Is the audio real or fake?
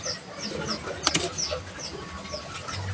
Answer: real